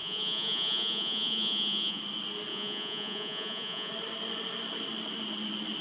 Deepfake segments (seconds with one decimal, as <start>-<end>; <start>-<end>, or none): 0.0-2.0; 2.5-3.9